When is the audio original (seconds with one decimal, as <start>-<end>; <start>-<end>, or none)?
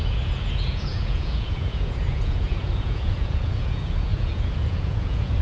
none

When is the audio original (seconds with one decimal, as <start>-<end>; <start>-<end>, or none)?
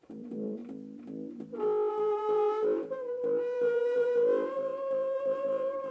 0.6-1.9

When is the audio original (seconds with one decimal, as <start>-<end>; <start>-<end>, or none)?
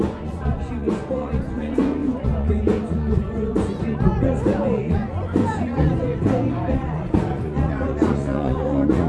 none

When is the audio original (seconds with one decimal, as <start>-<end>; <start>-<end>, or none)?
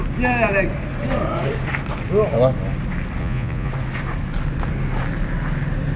0.0-3.2; 3.7-6.0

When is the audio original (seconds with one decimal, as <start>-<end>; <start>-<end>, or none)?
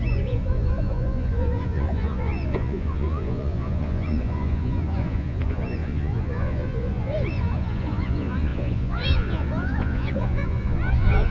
none